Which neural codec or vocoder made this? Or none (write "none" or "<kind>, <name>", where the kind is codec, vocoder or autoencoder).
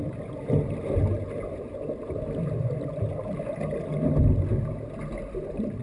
none